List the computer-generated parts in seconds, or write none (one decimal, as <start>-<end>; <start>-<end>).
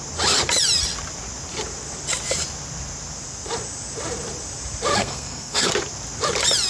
5.0-5.7